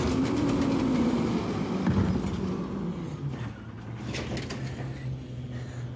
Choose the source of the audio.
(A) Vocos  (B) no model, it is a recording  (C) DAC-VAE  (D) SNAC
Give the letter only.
B